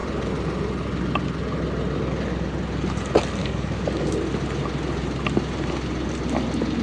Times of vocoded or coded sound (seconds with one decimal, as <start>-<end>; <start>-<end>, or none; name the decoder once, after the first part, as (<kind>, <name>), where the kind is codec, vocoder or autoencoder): 3.4-4.1 (codec, DAC)